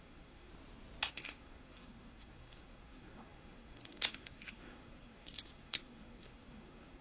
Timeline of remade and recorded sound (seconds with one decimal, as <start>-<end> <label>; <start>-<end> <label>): 0.0-0.5 remade; 0.5-1.1 recorded; 1.1-7.0 remade